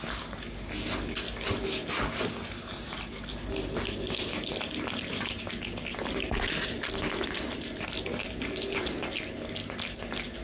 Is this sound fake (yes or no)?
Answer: no